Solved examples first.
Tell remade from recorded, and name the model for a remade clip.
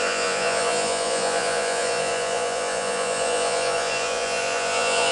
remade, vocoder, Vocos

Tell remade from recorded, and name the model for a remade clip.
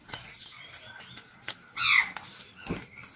recorded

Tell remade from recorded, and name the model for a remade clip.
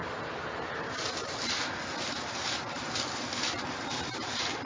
recorded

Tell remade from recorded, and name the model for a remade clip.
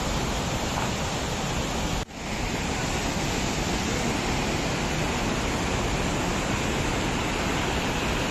recorded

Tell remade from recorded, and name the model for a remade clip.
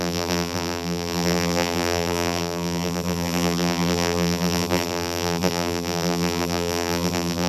remade, vocoder, BigVGAN v2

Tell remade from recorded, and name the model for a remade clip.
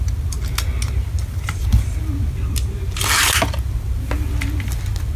recorded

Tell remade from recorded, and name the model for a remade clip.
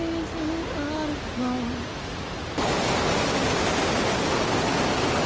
recorded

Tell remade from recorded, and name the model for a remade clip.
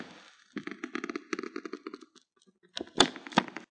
recorded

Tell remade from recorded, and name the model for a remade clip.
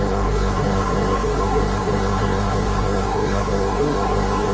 remade, codec, SNAC